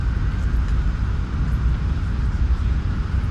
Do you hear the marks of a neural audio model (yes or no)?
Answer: no